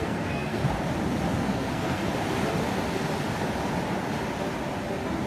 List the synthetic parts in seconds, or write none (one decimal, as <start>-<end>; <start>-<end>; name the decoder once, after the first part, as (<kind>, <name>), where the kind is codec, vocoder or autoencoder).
0.0-0.6 (codec, SNAC); 1.4-2.0